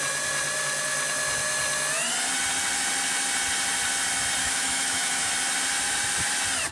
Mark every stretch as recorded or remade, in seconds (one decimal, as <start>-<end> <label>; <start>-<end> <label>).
0.0-4.4 recorded; 4.4-5.3 remade; 5.3-6.7 recorded